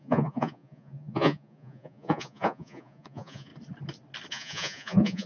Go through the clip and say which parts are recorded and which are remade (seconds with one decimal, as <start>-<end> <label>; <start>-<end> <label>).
0.0-3.5 remade; 3.5-4.3 recorded; 4.3-5.3 remade